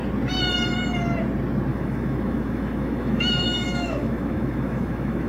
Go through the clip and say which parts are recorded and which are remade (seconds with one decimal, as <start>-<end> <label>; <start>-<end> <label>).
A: 0.0-1.7 recorded; 1.7-5.3 remade